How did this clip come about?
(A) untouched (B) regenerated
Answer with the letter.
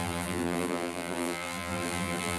B